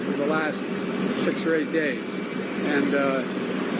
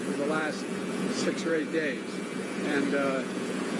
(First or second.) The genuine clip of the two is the first